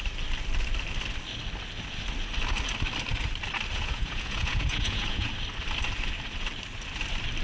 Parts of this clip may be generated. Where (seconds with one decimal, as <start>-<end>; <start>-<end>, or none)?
3.7-5.3